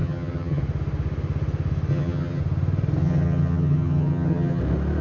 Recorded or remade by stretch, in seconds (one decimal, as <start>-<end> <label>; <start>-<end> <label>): 0.0-0.6 remade; 0.6-1.9 recorded; 1.9-2.4 remade; 2.4-3.0 recorded; 3.0-4.6 remade; 4.6-5.0 recorded